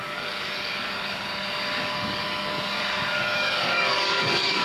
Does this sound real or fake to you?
fake